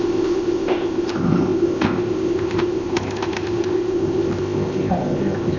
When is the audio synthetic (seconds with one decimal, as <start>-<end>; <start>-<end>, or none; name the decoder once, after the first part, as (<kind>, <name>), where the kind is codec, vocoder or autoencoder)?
0.0-5.6 (codec, ZipCodec)